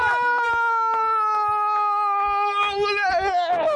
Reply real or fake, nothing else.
real